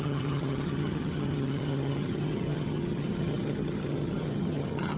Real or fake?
fake